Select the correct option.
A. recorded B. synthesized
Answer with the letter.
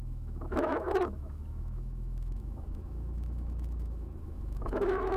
B